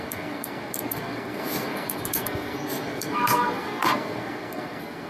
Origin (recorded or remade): remade